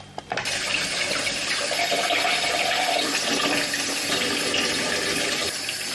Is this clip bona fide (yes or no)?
yes